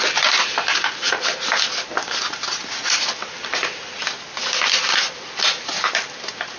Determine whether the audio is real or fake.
real